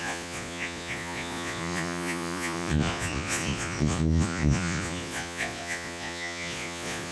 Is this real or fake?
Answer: fake